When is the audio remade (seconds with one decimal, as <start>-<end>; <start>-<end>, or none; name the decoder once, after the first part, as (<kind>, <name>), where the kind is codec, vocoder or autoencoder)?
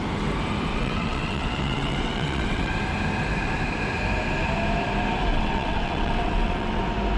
0.7-2.7 (vocoder, WaveNeXt); 5.3-6.8